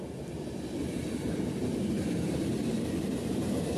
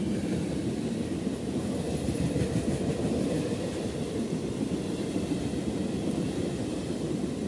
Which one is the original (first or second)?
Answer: first